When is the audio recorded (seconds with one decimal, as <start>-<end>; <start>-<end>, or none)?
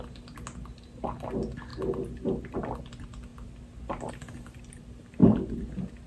0.0-6.1